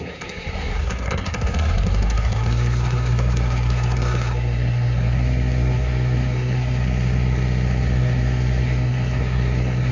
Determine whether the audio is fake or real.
fake